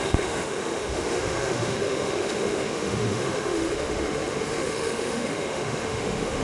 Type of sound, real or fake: fake